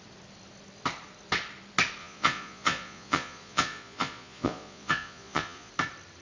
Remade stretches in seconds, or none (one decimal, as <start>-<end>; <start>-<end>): 2.0-5.7